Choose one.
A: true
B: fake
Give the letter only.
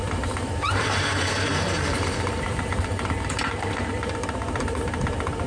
B